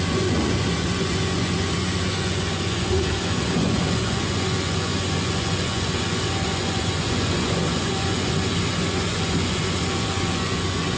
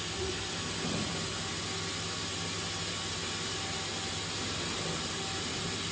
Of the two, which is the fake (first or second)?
first